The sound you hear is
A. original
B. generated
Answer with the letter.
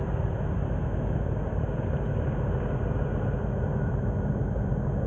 A